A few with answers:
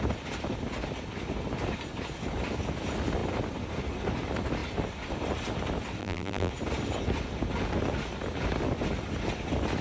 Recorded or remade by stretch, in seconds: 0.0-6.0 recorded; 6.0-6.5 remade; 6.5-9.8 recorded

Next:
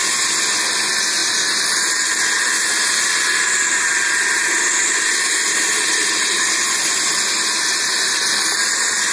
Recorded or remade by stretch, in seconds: 0.0-9.1 recorded

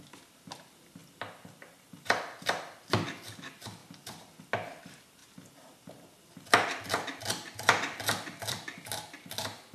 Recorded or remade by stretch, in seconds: 0.0-1.0 recorded; 1.0-2.9 remade; 2.9-9.7 recorded

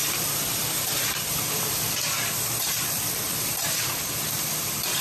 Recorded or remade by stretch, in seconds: 0.0-3.0 remade; 3.0-5.0 recorded

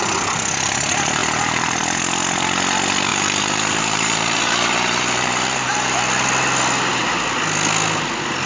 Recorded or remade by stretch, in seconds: 0.0-3.1 recorded; 3.1-6.0 remade; 6.0-8.5 recorded

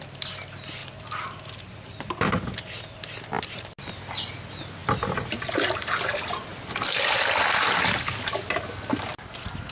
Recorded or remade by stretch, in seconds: 0.0-4.8 recorded; 4.8-5.9 remade; 5.9-9.7 recorded

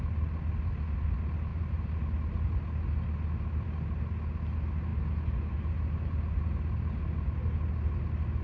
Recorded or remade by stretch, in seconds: 0.0-1.5 recorded; 1.5-2.0 remade; 2.0-8.4 recorded